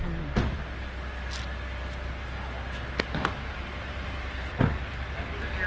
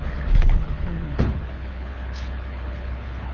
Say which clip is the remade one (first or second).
second